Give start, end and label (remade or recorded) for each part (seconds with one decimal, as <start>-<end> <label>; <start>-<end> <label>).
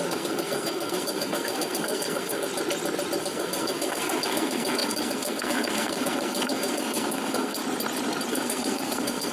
0.0-2.5 remade; 2.5-3.2 recorded; 3.2-7.6 remade; 7.6-8.3 recorded; 8.3-9.3 remade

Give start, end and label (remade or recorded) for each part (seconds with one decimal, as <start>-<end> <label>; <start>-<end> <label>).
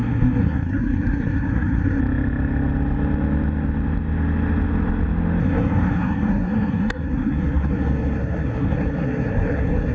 0.0-2.0 remade; 2.0-5.4 recorded; 5.4-9.9 remade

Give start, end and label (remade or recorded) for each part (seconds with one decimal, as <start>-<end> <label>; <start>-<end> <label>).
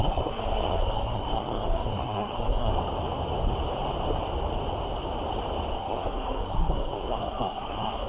0.0-2.7 remade; 2.7-5.8 recorded; 5.8-8.1 remade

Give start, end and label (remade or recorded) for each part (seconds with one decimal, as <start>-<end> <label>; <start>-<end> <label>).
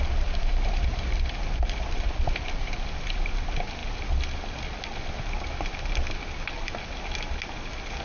0.0-8.0 recorded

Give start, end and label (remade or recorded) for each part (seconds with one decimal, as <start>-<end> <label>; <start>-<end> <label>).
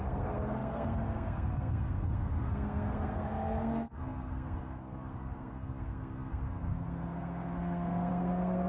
0.0-8.7 remade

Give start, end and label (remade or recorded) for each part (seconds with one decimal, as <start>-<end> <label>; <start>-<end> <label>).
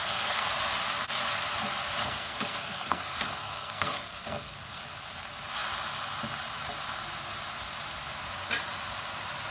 0.0-0.5 remade; 0.5-2.0 recorded; 2.0-4.8 remade; 4.8-9.5 recorded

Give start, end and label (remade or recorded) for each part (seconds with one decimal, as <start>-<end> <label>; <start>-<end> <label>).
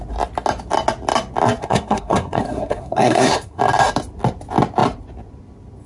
0.0-1.6 recorded; 1.6-3.6 remade; 3.6-5.9 recorded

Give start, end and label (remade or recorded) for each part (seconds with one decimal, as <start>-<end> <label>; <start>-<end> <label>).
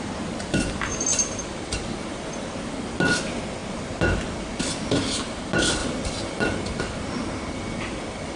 0.0-8.4 recorded